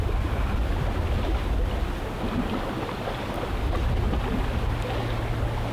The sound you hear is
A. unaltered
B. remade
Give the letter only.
A